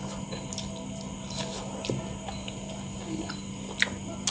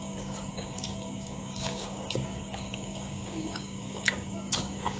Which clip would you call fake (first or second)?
second